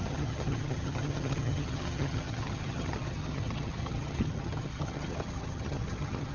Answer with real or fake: fake